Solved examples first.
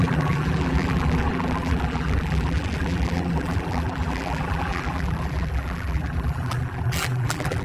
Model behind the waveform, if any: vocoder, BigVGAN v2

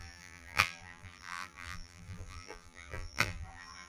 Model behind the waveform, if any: vocoder, BigVGAN v2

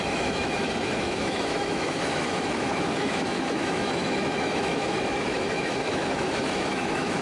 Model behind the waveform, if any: autoencoder, DAC-VAE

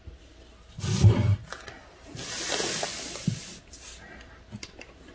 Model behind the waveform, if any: none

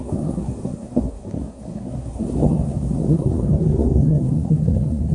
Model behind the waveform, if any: codec, SNAC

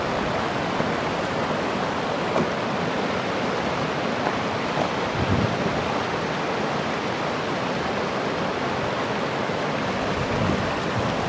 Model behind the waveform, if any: none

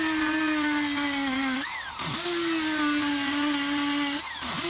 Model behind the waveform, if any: none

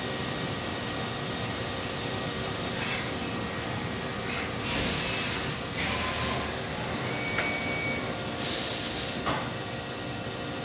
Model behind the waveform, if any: none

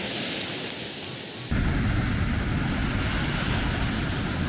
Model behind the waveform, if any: none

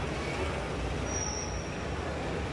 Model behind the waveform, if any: none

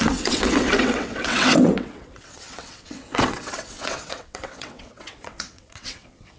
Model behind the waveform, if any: vocoder, WaveNeXt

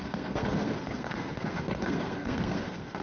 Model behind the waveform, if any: codec, SNAC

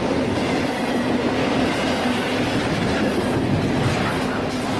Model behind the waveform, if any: none